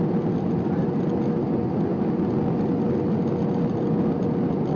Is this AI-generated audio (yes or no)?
no